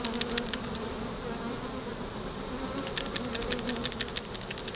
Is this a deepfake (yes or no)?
no